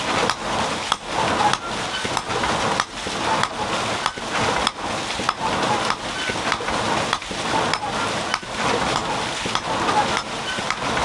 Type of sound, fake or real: real